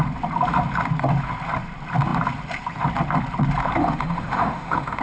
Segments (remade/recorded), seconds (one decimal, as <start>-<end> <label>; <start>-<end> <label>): 0.0-3.8 recorded; 3.8-5.0 remade